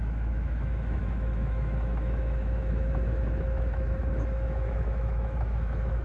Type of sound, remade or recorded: remade